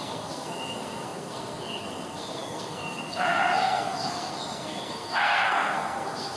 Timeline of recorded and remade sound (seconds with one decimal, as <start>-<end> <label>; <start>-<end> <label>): 0.0-6.4 remade